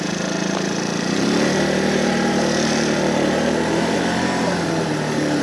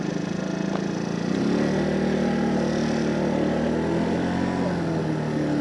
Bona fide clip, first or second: second